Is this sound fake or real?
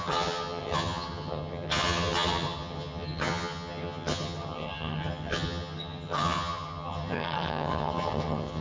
fake